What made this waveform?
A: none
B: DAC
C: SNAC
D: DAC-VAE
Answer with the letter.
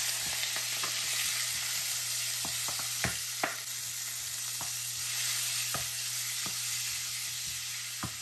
A